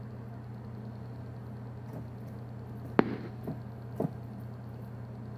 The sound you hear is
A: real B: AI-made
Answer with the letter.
A